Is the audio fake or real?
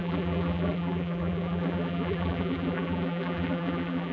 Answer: fake